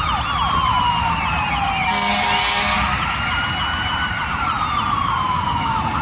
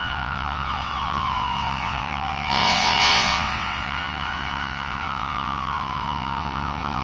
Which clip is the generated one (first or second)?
second